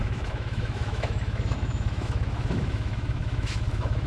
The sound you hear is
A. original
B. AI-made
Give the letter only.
B